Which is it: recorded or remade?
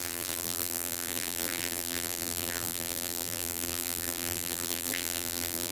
remade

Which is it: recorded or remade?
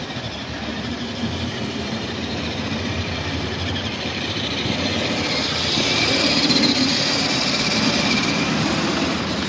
remade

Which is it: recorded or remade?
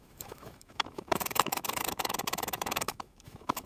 remade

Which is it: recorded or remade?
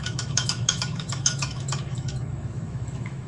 remade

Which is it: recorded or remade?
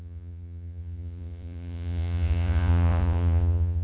remade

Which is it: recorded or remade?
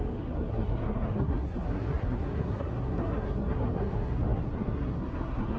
remade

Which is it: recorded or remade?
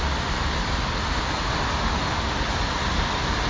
recorded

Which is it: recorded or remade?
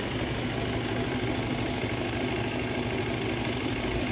recorded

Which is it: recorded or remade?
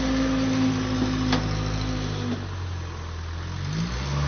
recorded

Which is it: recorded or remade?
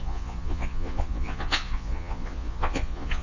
remade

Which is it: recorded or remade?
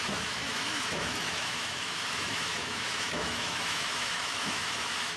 remade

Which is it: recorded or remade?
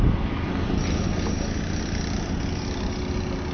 recorded